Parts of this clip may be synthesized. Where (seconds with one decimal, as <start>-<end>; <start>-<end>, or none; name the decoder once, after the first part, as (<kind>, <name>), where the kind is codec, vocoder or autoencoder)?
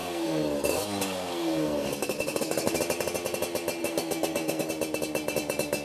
0.0-2.8 (codec, SNAC); 3.8-4.7